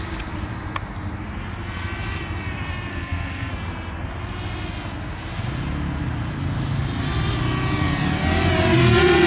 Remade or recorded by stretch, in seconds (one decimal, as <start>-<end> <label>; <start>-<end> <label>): 0.0-2.9 recorded; 2.9-3.5 remade; 3.5-9.3 recorded